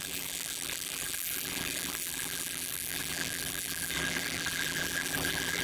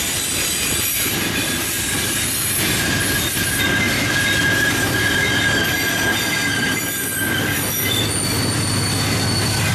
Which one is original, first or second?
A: second